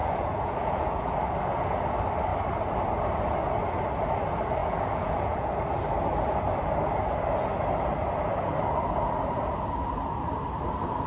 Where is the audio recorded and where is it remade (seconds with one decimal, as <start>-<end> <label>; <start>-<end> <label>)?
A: 0.0-1.1 remade; 1.1-4.6 recorded; 4.6-5.5 remade; 5.5-11.1 recorded